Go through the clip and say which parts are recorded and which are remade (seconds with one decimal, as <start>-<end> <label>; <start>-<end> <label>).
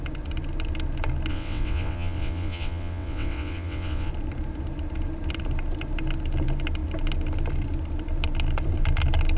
0.0-1.3 recorded; 1.3-4.1 remade; 4.1-9.4 recorded